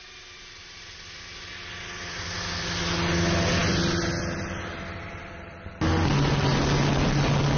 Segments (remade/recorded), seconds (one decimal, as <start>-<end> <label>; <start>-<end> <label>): 0.0-7.6 recorded